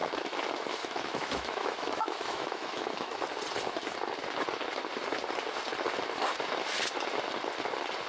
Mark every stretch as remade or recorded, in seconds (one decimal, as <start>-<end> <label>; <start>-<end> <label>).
0.0-3.2 remade; 3.2-8.1 recorded

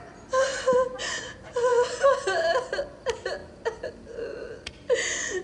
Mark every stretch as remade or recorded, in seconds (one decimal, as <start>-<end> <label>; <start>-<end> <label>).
0.0-5.4 recorded

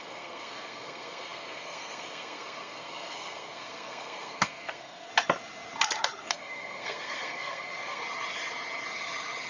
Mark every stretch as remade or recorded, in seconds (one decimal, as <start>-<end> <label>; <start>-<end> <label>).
0.0-5.1 remade; 5.1-6.3 recorded; 6.3-8.0 remade; 8.0-9.5 recorded

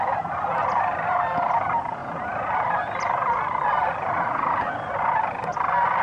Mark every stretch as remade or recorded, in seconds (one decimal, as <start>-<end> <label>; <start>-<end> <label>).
0.0-6.0 recorded

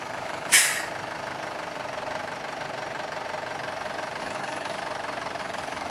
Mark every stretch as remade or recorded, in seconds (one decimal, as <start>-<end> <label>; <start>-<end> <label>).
0.0-0.7 remade; 0.7-4.2 recorded; 4.2-4.8 remade; 4.8-5.4 recorded; 5.4-5.9 remade

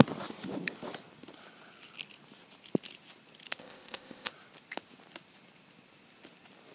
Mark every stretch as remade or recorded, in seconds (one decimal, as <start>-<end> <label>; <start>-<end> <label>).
0.0-3.6 recorded; 3.6-4.3 remade; 4.3-6.7 recorded

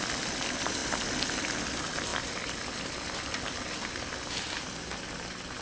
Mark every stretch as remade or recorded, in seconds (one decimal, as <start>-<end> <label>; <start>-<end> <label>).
0.0-5.6 recorded

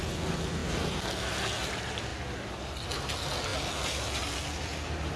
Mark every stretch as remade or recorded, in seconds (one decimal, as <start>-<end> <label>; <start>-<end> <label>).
0.0-5.2 recorded